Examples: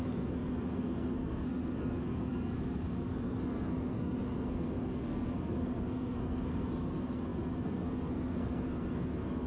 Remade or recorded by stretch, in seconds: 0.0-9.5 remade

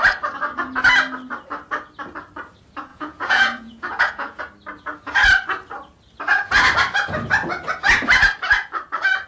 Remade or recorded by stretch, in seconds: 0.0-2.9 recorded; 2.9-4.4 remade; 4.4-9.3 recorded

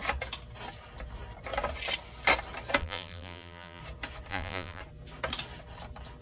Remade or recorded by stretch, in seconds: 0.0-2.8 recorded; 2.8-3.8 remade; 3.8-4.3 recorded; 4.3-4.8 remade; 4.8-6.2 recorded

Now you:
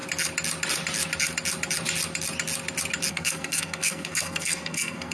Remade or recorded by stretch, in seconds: 0.0-3.1 recorded; 3.1-5.1 remade